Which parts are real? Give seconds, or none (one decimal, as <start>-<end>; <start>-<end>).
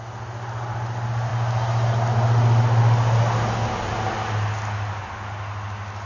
0.0-6.1